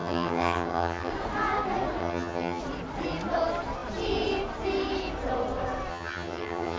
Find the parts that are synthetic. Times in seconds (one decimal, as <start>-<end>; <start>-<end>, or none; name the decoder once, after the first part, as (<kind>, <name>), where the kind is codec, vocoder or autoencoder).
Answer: 0.0-1.1 (vocoder, HiFi-GAN); 2.0-2.6; 5.9-6.8